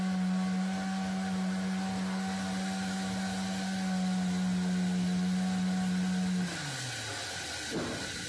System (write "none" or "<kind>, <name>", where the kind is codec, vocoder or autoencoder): none